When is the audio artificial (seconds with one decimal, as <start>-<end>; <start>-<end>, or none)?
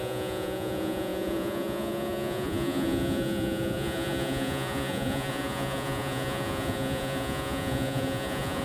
0.0-8.6